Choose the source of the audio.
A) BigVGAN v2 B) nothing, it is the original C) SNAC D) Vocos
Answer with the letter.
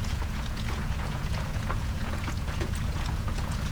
D